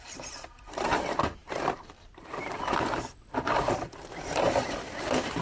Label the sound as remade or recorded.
recorded